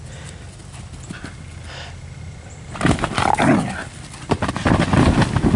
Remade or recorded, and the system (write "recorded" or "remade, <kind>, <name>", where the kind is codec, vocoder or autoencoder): recorded